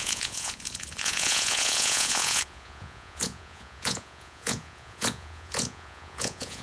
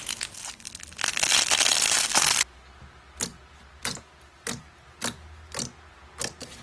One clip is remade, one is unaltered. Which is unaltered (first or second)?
second